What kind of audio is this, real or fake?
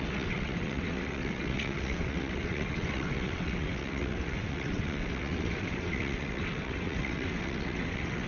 fake